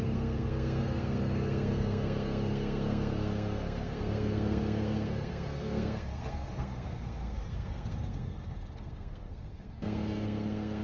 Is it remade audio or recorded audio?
remade